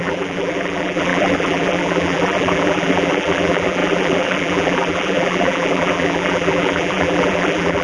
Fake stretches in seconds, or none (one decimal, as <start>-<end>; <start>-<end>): 0.0-7.8